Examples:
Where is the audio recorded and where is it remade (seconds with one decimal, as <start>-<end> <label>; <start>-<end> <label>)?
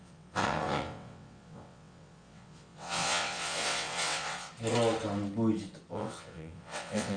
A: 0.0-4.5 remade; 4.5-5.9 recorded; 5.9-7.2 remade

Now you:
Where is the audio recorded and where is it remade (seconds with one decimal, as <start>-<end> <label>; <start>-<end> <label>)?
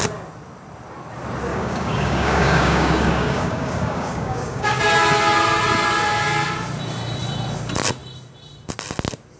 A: 0.0-1.5 recorded; 1.5-4.8 remade; 4.8-9.4 recorded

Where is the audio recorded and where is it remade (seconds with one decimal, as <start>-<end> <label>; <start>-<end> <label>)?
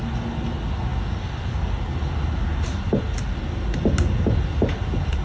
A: 0.0-5.2 recorded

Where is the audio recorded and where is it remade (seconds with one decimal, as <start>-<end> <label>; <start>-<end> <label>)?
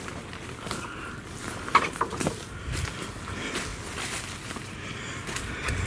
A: 0.0-5.9 recorded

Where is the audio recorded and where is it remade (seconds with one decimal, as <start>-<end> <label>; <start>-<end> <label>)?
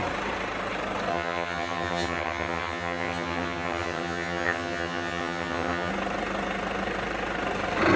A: 0.0-1.1 recorded; 1.1-5.9 remade; 5.9-8.0 recorded